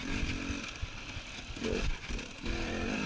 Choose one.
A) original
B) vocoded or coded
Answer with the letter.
A